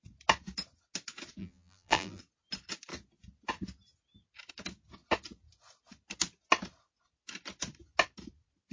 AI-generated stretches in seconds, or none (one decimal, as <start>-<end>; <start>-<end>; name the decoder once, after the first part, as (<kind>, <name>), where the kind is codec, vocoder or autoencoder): 1.4-2.2 (vocoder, BigVGAN v2)